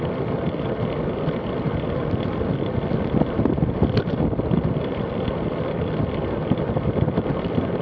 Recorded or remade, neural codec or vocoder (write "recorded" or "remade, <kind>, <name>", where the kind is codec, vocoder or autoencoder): recorded